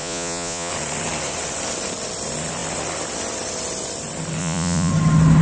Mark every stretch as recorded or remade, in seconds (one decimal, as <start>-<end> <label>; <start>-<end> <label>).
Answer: 0.0-0.7 remade; 0.7-4.4 recorded; 4.4-4.9 remade; 4.9-5.4 recorded